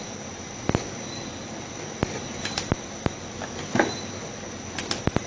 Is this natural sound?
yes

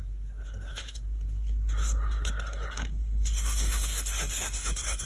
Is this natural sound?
no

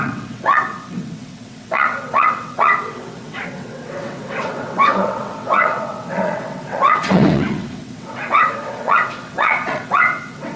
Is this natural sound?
no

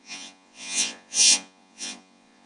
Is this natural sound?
no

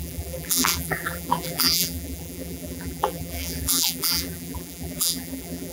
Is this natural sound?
no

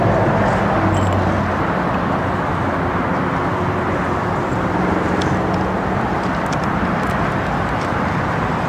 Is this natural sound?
yes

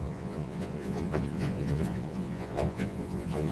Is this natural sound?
no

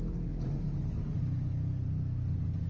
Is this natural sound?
yes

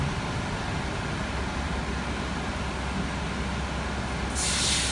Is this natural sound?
yes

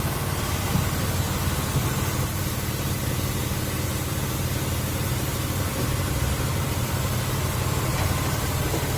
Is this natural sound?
no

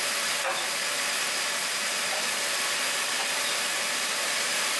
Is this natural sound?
yes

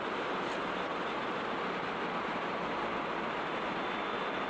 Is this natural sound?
yes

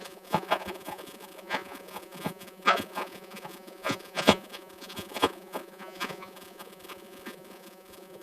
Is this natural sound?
no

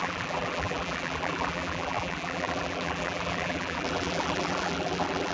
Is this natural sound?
no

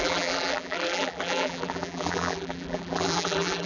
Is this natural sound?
no